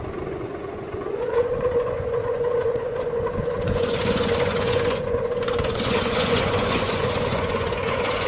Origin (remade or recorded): remade